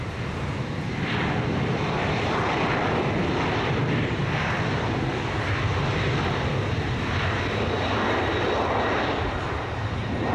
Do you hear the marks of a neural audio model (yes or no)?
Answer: no